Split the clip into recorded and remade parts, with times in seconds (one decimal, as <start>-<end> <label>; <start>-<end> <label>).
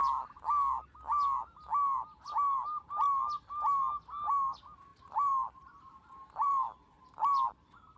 0.0-4.9 recorded; 4.9-6.1 remade; 6.1-8.0 recorded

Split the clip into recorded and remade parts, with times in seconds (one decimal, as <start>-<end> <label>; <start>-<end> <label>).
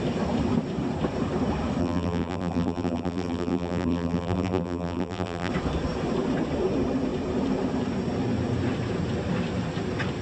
0.0-1.8 recorded; 1.8-5.5 remade; 5.5-10.2 recorded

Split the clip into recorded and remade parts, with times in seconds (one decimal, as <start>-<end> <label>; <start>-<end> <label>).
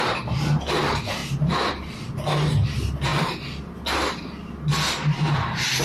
0.0-5.8 recorded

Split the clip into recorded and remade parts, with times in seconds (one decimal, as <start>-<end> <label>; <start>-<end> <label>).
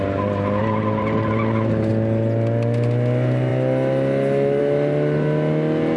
0.0-0.6 recorded; 0.6-1.9 remade; 1.9-6.0 recorded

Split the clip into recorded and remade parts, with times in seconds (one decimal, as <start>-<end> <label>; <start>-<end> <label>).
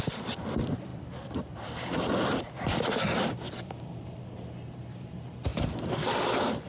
0.0-5.5 remade; 5.5-6.2 recorded; 6.2-6.7 remade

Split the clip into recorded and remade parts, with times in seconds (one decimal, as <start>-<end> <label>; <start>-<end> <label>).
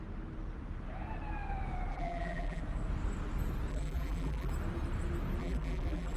0.0-1.9 recorded; 1.9-2.6 remade; 2.6-3.7 recorded; 3.7-4.5 remade; 4.5-5.4 recorded; 5.4-6.2 remade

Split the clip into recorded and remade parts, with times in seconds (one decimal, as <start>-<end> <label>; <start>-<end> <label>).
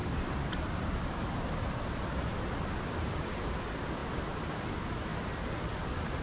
0.0-6.2 recorded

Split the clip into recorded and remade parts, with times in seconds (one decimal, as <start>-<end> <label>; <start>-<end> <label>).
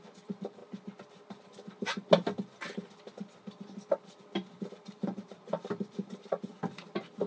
0.0-0.6 remade; 0.6-4.7 recorded; 4.7-6.5 remade; 6.5-7.3 recorded